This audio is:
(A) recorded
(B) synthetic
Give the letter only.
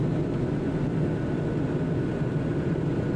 A